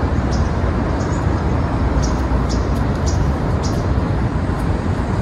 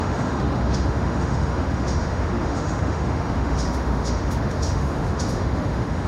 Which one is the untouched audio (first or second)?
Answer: first